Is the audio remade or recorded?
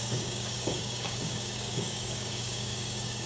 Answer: remade